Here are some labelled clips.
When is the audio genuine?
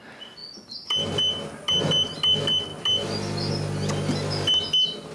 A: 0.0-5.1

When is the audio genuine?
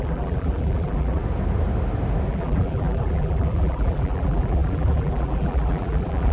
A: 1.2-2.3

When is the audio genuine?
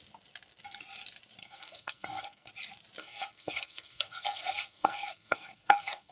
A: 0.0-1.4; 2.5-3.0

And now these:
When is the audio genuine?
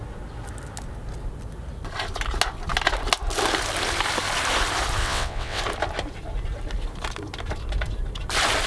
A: 0.0-5.0; 5.6-8.7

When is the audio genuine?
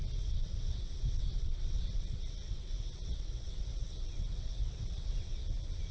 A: 5.3-5.9